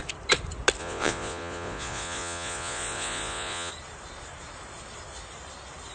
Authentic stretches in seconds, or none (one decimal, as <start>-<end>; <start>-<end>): 0.0-0.8; 3.7-5.9